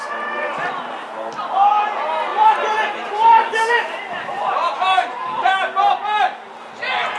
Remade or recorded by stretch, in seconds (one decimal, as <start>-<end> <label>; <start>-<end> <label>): 0.0-2.3 recorded; 2.3-3.8 remade; 3.8-7.2 recorded